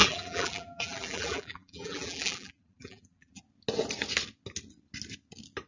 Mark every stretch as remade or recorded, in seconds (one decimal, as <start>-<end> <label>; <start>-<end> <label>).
0.0-3.4 remade; 3.4-5.7 recorded